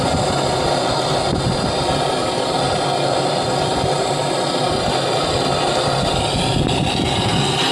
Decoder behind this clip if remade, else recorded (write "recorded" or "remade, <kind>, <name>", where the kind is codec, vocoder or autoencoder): recorded